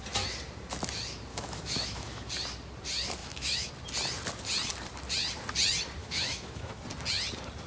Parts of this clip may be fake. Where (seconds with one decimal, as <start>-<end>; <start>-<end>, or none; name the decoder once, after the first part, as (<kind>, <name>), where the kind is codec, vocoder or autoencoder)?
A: 1.3-2.3 (autoencoder, DAC-VAE); 3.2-3.7; 6.0-6.8